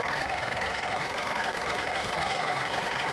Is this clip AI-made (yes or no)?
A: yes